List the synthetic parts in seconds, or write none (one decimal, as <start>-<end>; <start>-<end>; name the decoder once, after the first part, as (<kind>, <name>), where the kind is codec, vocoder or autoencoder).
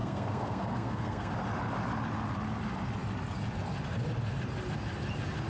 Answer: 0.0-1.3 (codec, SNAC)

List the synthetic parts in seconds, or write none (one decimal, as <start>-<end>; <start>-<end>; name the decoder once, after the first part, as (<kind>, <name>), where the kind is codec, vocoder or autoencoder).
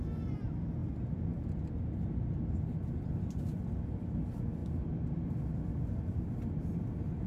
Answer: none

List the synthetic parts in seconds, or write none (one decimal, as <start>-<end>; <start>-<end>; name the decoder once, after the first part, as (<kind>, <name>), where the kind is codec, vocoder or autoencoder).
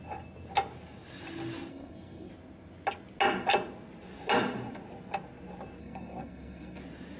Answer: 1.7-2.3 (codec, SNAC); 5.8-6.8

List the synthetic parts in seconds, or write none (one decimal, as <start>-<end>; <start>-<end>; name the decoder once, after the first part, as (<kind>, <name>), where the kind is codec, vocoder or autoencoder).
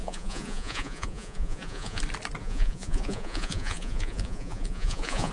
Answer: 0.0-2.0 (vocoder, Vocos); 2.4-5.3